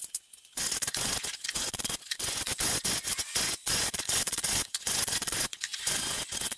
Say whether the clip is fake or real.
fake